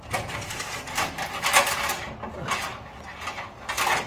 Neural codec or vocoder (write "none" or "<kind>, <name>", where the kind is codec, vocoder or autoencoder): none